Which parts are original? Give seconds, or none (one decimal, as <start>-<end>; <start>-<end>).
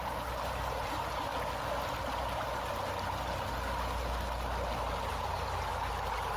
1.3-5.1; 5.7-6.4